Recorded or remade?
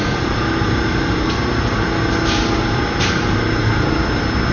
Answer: recorded